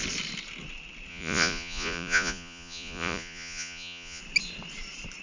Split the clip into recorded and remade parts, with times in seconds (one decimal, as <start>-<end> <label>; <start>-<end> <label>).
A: 0.0-1.1 recorded; 1.1-4.2 remade; 4.2-5.2 recorded